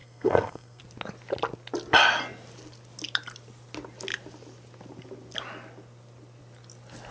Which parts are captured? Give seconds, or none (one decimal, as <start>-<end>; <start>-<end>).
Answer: 0.8-7.1